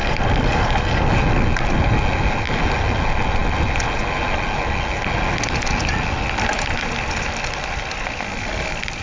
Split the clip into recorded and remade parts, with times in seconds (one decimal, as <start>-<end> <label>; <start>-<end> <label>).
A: 0.0-9.0 recorded